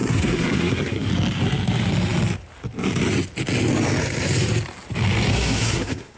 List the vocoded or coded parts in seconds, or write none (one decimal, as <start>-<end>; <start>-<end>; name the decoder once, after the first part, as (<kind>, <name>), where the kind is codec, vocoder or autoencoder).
0.0-1.1 (codec, SNAC); 5.3-6.2